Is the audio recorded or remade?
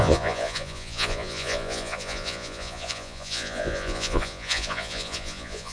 remade